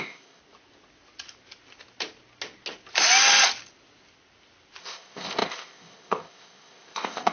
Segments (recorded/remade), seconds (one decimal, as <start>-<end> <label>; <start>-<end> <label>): 0.0-0.4 remade; 0.4-4.8 recorded; 4.8-7.3 remade